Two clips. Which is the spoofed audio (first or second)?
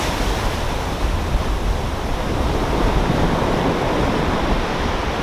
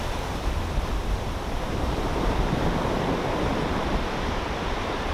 second